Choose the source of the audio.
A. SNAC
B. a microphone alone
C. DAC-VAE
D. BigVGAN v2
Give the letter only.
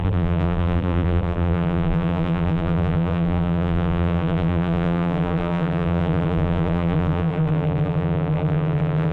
D